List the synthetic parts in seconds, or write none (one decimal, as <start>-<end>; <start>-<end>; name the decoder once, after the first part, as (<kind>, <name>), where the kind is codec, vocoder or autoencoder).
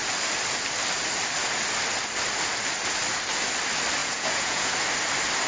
4.0-4.7 (vocoder, Vocos)